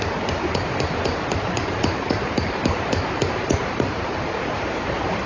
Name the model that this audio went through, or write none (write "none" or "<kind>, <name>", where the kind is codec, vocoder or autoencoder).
vocoder, BigVGAN v2